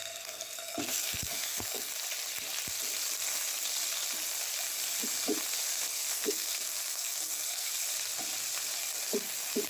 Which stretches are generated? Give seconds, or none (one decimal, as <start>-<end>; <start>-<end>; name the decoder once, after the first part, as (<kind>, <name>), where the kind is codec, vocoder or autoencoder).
0.0-1.9 (codec, SNAC); 5.9-7.7